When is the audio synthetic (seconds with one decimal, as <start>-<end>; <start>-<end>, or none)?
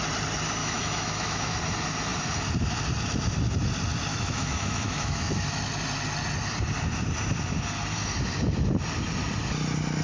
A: 0.6-1.6; 4.1-5.6